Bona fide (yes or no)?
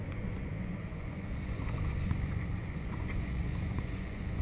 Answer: no